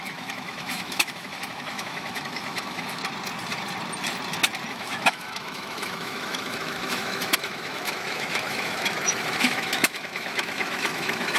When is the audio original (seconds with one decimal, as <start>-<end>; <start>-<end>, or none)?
3.0-4.7